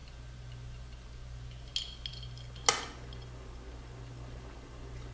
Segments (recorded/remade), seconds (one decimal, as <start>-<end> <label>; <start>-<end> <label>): 0.0-5.1 recorded